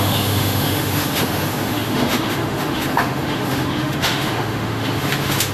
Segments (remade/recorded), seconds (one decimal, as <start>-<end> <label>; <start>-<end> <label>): 0.0-5.5 remade